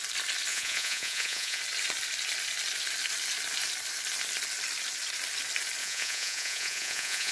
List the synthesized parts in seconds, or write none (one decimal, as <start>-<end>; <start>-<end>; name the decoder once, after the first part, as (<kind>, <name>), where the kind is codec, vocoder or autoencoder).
0.5-1.6 (vocoder, Vocos); 5.8-7.3

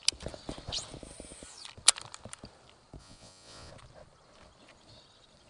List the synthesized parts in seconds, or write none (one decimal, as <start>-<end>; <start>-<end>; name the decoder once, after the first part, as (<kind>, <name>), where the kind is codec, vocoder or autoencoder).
3.0-3.7 (vocoder, Vocos)

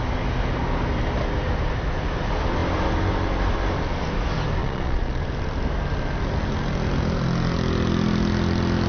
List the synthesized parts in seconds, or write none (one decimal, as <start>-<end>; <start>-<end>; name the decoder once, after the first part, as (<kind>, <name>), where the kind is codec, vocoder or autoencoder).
4.6-5.2 (vocoder, Vocos)